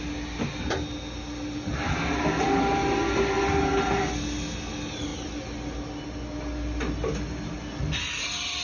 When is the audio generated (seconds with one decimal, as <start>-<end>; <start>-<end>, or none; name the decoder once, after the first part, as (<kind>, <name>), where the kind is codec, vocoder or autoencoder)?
none